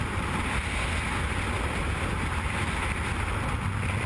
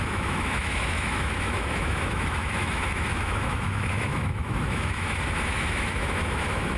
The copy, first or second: second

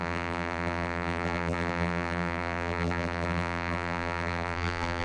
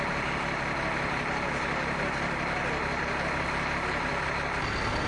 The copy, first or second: first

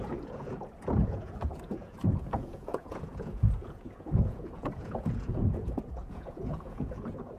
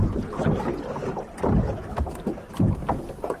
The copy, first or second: first